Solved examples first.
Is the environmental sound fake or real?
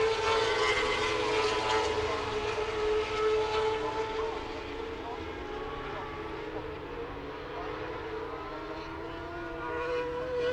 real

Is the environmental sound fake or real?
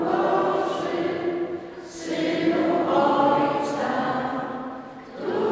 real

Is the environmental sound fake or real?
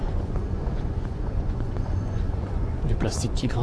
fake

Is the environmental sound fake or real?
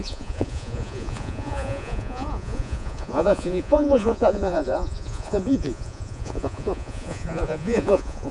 fake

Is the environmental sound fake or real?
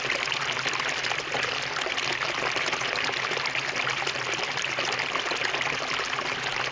real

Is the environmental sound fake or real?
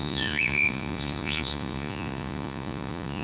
fake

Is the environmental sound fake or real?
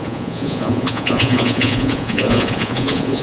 fake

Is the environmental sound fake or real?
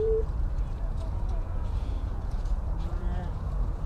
fake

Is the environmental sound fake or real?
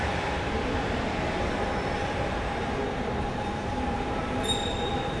real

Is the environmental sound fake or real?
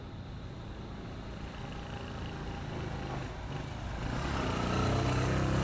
real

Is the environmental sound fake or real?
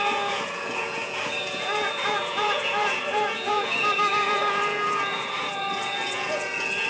fake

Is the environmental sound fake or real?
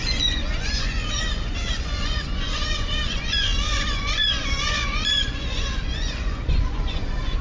fake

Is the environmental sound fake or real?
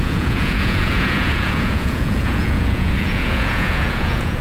fake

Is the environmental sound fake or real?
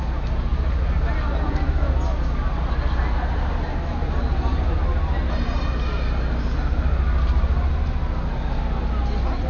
real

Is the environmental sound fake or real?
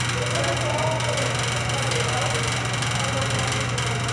real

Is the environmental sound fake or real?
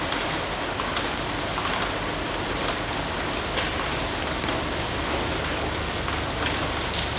real